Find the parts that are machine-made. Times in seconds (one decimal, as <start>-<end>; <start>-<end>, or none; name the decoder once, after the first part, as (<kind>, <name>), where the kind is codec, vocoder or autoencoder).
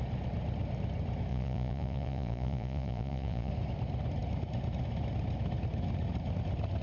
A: 1.3-3.5 (vocoder, Vocos)